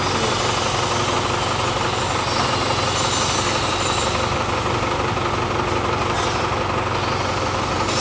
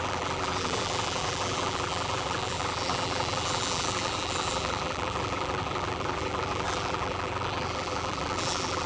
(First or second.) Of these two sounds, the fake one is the second